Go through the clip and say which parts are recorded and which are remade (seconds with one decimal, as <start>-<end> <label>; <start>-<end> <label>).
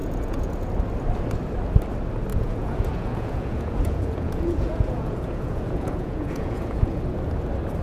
0.0-0.7 remade; 0.7-2.3 recorded; 2.3-7.0 remade; 7.0-7.8 recorded